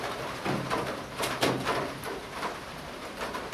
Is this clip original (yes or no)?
no